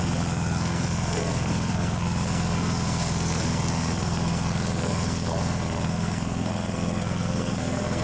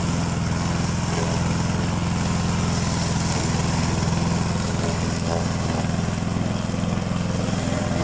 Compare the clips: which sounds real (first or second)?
second